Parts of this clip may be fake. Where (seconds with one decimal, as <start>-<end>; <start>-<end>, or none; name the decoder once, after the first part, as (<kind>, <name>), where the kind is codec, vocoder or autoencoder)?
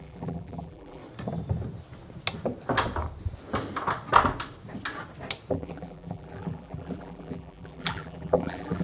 0.0-1.0 (vocoder, BigVGAN v2); 5.5-8.8